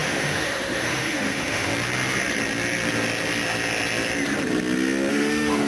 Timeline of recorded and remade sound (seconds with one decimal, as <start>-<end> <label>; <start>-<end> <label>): 0.0-1.7 remade; 1.7-5.1 recorded; 5.1-5.7 remade